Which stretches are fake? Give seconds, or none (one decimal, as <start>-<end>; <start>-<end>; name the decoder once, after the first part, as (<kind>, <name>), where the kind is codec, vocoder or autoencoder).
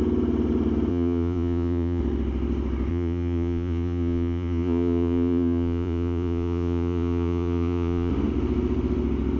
0.9-2.0 (vocoder, Vocos); 2.9-8.1